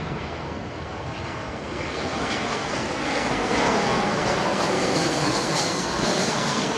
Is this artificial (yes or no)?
yes